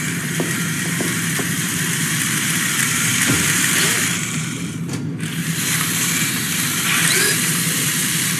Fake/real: fake